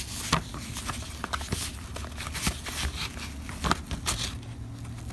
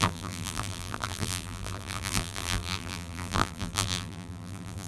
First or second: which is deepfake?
second